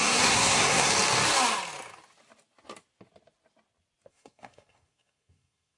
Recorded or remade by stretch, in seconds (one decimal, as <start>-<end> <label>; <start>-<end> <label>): 0.0-0.9 remade; 0.9-4.1 recorded; 4.1-5.8 remade